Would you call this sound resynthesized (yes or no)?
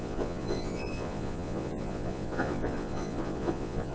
yes